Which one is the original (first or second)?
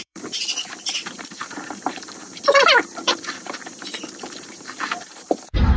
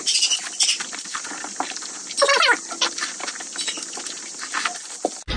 second